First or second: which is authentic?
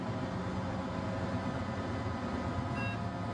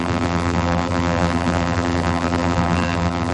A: first